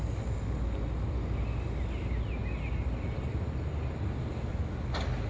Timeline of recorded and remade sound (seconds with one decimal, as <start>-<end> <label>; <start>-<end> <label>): 0.0-5.3 recorded